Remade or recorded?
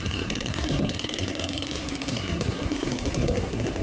remade